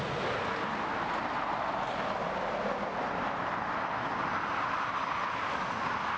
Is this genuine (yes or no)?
yes